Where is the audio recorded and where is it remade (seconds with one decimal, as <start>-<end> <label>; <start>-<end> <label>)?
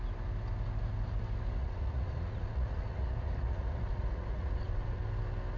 0.0-1.6 recorded; 1.6-5.0 remade; 5.0-5.6 recorded